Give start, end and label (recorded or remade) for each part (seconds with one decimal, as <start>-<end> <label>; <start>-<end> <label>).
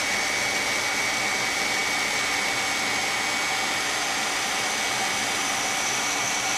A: 0.0-6.6 recorded